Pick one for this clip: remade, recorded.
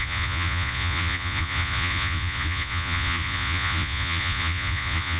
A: remade